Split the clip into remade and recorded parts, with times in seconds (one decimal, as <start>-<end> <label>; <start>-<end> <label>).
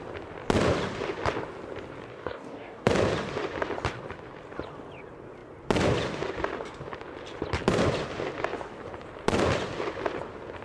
0.0-2.1 recorded; 2.1-2.9 remade; 2.9-10.6 recorded